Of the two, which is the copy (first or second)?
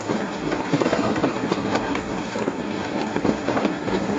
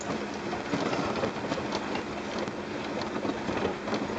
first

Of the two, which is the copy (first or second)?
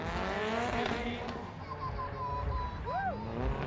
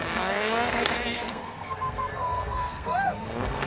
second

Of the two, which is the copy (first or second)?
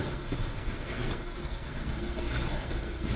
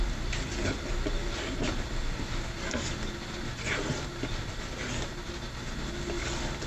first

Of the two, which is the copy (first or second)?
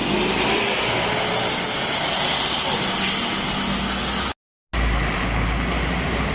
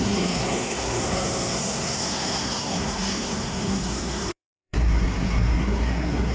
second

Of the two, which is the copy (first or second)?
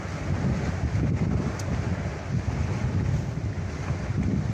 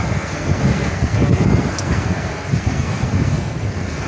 second